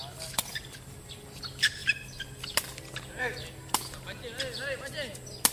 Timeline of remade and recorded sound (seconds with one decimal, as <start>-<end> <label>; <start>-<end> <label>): 0.0-5.5 recorded

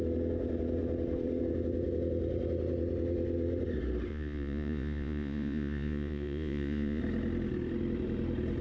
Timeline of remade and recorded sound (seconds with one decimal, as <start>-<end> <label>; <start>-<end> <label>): 0.0-4.1 recorded; 4.1-7.0 remade; 7.0-8.6 recorded

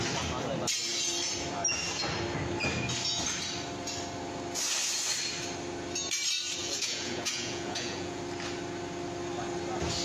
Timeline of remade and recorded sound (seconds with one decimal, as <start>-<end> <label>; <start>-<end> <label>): 0.0-6.6 recorded; 6.6-8.2 remade; 8.2-10.0 recorded

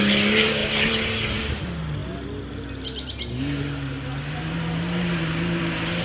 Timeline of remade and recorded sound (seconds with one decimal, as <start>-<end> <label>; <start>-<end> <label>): 0.0-6.0 recorded

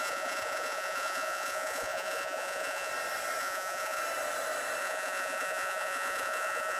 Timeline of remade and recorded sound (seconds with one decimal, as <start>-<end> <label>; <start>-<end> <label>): 0.0-2.9 remade; 2.9-3.4 recorded; 3.4-4.0 remade; 4.0-4.8 recorded; 4.8-6.8 remade

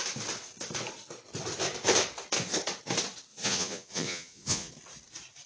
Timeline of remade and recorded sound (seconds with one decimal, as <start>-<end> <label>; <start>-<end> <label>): 0.0-3.3 recorded; 3.3-4.7 remade; 4.7-5.5 recorded